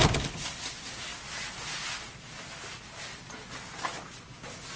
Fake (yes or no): no